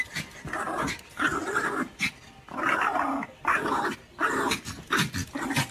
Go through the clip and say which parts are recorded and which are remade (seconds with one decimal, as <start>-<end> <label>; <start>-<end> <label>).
0.0-5.7 recorded